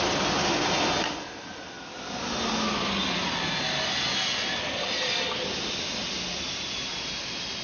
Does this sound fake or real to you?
real